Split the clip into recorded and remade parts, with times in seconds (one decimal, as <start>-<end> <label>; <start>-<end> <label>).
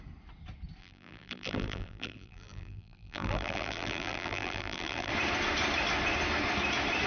0.0-0.8 recorded; 0.8-5.1 remade; 5.1-7.1 recorded